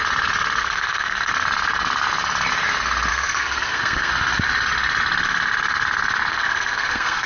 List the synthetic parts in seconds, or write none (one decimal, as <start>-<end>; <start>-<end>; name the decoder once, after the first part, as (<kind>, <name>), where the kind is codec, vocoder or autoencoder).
0.6-1.3 (codec, SNAC); 3.1-4.1; 6.3-7.3